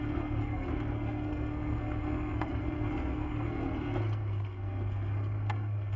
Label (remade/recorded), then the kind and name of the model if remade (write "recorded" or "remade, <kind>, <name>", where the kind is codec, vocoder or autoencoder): remade, codec, SNAC